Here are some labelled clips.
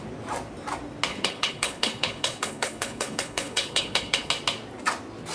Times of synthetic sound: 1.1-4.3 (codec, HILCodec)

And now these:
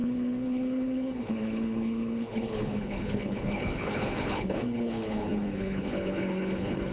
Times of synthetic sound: 0.0-6.9 (codec, HILCodec)

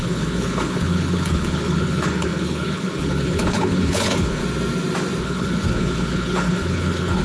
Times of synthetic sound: 0.0-4.4 (codec, HILCodec); 5.2-7.2

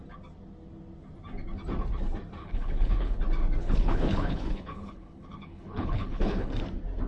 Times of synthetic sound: 2.4-3.2 (codec, HILCodec); 3.6-6.5

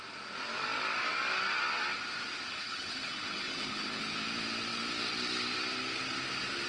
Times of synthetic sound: 2.5-4.0 (codec, HILCodec)

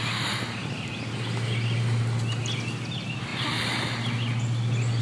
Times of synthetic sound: none